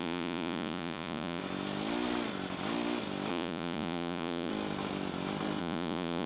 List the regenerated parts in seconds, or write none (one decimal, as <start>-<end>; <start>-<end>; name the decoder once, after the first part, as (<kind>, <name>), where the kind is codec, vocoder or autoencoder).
0.0-1.4 (vocoder, Vocos); 3.3-4.5; 5.6-6.3